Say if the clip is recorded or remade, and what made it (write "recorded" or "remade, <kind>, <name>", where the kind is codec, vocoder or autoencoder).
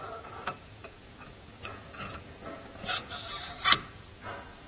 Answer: remade, vocoder, Vocos